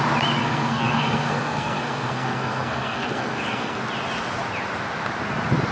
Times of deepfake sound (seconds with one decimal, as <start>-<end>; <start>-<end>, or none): 0.4-3.8

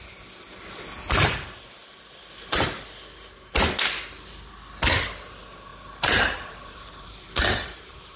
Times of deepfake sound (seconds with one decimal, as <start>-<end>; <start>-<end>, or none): 5.7-8.2

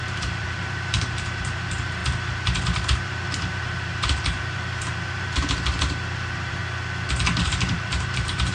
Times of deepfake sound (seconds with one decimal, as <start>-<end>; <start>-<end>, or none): 0.0-6.6; 7.4-8.5

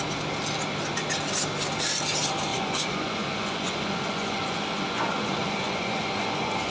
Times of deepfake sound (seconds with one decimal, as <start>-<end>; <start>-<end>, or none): 2.5-6.7

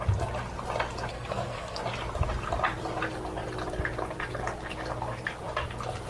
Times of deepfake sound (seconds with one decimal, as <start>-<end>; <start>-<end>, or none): 1.1-1.8

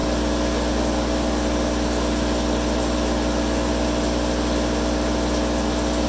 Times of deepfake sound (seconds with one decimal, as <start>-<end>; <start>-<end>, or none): none

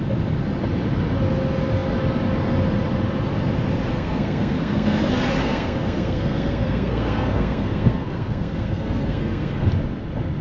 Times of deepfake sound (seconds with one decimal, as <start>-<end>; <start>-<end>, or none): 3.9-5.0; 5.4-9.7

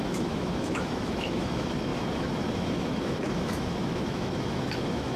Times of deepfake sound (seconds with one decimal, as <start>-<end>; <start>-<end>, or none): 0.0-5.2